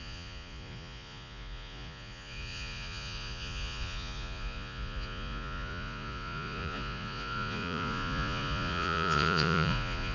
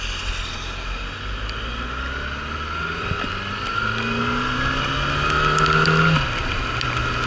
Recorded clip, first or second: second